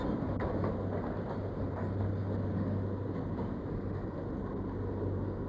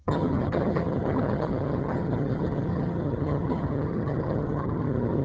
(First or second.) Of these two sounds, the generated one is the second